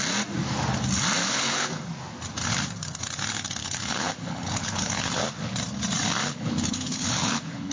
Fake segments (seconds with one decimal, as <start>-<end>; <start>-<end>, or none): 1.2-1.7; 3.6-5.2; 6.2-7.7